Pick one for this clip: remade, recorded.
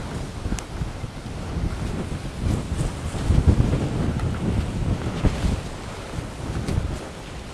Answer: recorded